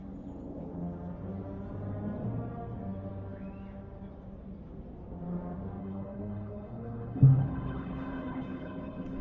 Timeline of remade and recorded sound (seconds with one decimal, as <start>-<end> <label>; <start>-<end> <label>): 0.0-5.8 recorded; 5.8-9.2 remade